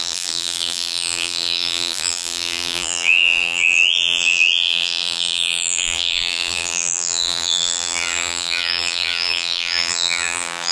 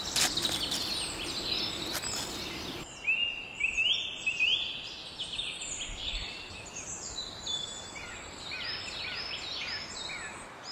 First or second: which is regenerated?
first